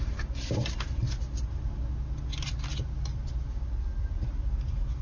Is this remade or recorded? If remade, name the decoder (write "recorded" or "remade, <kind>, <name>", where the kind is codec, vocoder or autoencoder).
recorded